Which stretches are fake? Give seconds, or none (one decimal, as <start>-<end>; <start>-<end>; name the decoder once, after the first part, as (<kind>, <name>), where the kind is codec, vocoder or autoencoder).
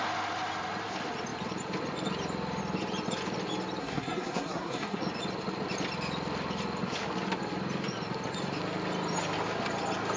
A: 3.8-5.0 (codec, SNAC)